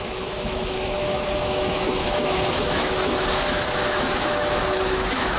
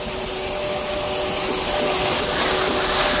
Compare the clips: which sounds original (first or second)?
second